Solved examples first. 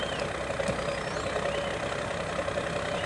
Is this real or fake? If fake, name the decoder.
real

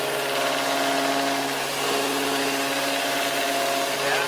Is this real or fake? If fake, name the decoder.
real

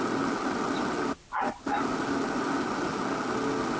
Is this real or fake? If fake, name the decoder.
real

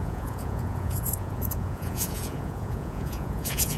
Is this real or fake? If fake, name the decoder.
fake, vocoder, Vocos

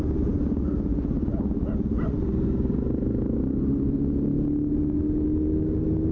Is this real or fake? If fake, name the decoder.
real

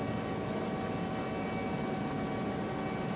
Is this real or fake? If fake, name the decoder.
real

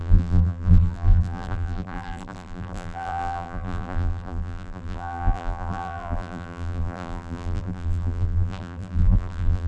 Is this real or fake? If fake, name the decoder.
fake, vocoder, BigVGAN v2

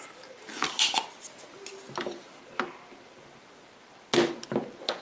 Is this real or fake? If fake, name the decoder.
real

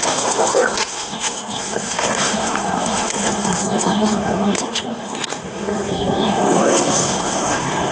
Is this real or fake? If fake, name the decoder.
fake, codec, SNAC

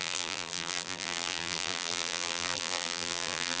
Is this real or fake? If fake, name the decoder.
fake, vocoder, BigVGAN v2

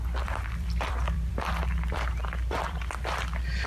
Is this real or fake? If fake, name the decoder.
fake, vocoder, BigVGAN v2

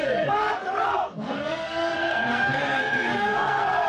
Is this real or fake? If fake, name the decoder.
fake, codec, SNAC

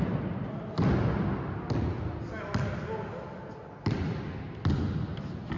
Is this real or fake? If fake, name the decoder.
real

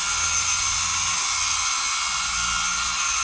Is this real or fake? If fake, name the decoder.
real